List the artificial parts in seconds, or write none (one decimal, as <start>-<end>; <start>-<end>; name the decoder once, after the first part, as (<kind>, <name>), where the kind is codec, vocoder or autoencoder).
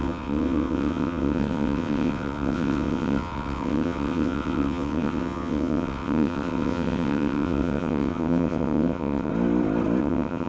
0.0-9.3 (vocoder, WaveNeXt); 10.0-10.5